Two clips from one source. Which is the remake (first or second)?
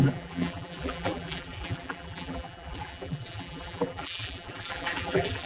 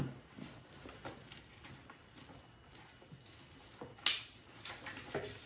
first